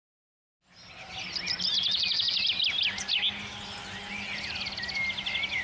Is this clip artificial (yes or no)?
no